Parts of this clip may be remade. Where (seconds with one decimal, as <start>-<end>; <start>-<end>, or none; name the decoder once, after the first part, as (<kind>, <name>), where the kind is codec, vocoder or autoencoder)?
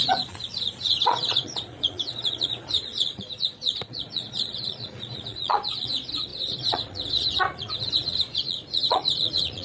0.0-9.6 (vocoder, Vocos)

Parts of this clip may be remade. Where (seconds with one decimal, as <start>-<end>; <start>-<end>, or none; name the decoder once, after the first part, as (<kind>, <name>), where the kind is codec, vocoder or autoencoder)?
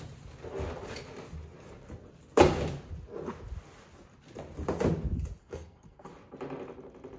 5.4-6.1 (codec, SNAC)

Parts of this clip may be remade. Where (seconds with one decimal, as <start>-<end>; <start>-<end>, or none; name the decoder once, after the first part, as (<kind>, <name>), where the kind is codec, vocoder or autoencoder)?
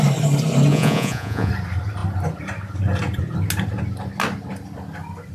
0.7-1.5 (vocoder, Vocos)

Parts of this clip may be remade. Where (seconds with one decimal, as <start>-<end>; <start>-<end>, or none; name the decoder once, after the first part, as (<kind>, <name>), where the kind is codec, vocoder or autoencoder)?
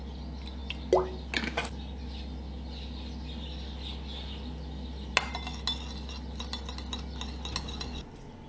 none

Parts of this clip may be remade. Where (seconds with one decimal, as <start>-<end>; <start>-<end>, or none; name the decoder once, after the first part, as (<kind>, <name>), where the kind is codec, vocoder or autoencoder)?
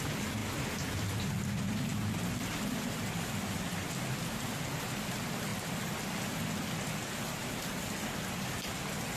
0.0-0.4 (vocoder, BigVGAN v2); 1.2-9.2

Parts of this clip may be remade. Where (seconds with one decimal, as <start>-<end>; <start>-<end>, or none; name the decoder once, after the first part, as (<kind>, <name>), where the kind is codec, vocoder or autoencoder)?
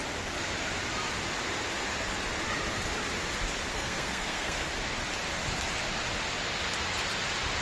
3.7-4.7 (codec, SNAC)